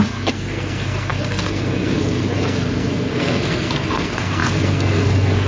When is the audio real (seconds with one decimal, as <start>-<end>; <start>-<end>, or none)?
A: none